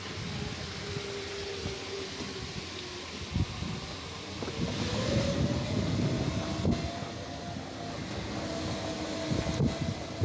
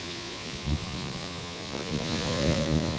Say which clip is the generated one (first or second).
second